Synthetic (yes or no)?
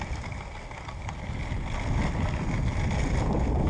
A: no